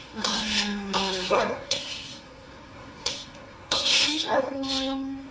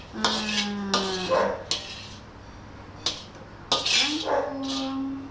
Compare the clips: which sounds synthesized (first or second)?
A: first